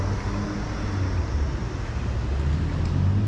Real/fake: real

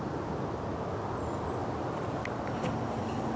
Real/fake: real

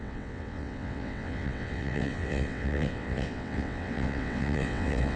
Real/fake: fake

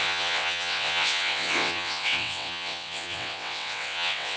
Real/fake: fake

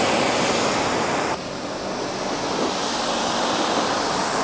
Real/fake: real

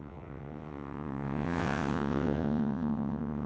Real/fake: fake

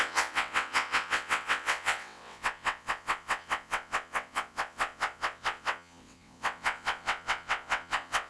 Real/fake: fake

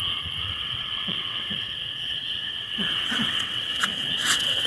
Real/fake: fake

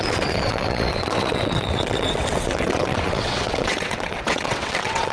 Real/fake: fake